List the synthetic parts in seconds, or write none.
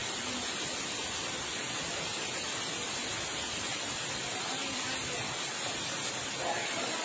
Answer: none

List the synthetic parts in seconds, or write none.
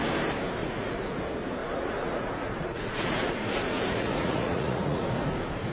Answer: 0.6-1.2 (vocoder, Vocos); 1.6-5.0